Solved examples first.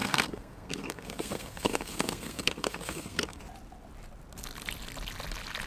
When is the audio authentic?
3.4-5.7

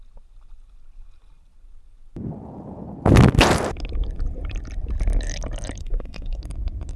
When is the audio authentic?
0.0-5.8; 6.4-7.0

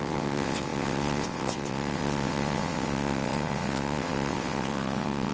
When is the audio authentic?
none

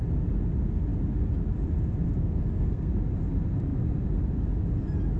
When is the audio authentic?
0.0-2.2; 2.9-5.2